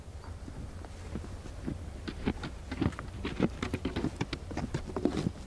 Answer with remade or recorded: recorded